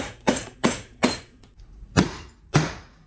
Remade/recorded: remade